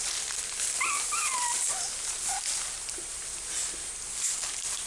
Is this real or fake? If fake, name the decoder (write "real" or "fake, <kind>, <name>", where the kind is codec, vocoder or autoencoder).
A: real